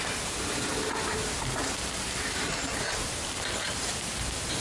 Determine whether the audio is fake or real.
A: real